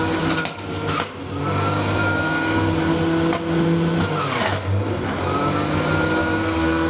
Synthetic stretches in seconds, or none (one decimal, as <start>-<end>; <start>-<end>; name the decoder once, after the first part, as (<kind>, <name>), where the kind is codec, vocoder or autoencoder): 2.0-2.7 (codec, DAC); 6.2-6.9